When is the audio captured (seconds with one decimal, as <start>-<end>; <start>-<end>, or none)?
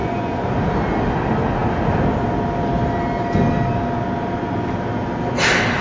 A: 0.5-5.8